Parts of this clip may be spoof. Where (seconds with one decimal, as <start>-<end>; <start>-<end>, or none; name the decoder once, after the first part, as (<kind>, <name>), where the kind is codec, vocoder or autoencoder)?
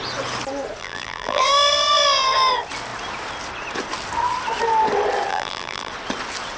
0.8-1.4 (vocoder, BigVGAN v2); 5.3-5.9